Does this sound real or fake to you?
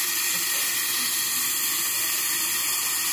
real